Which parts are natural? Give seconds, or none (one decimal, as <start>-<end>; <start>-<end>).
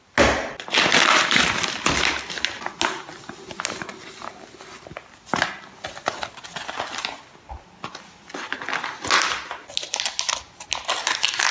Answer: 0.0-11.5